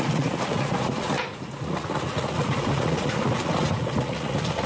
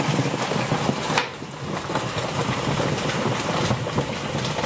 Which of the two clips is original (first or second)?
second